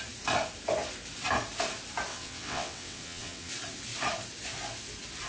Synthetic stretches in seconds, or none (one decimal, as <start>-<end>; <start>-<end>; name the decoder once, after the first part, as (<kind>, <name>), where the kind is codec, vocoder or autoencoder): 2.1-3.5 (vocoder, WaveNeXt)